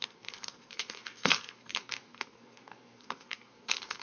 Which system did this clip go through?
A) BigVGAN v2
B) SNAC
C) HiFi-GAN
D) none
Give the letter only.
B